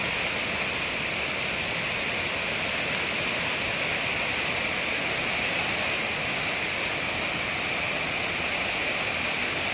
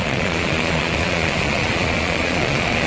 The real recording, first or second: first